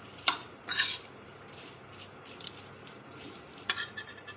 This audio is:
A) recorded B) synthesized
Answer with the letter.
B